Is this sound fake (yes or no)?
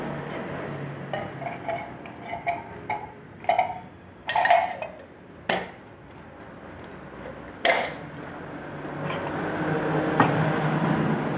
no